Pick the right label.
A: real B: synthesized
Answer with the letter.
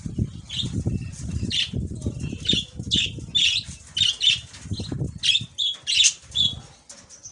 A